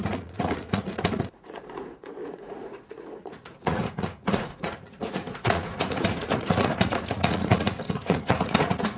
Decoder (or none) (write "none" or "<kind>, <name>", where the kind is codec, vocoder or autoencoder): vocoder, Vocos